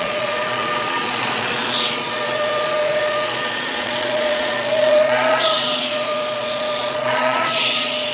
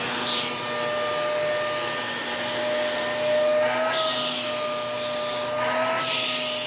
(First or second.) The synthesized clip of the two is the first